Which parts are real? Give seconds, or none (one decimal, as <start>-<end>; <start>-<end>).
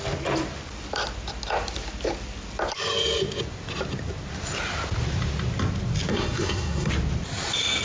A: 0.0-6.1; 6.9-7.8